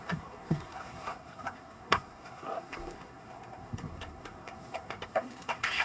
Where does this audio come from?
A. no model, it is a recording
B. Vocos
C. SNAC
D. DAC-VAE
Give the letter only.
C